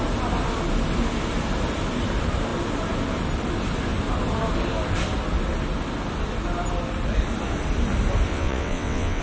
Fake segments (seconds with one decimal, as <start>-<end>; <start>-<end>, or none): 8.3-9.2